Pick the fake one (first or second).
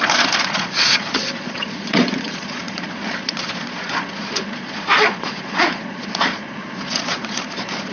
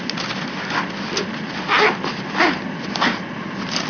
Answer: first